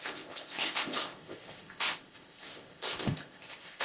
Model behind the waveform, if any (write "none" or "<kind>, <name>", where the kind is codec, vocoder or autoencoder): codec, ZipCodec